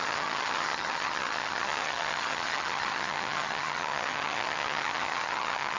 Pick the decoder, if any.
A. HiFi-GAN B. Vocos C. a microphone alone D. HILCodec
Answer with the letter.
A